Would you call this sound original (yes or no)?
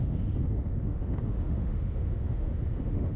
no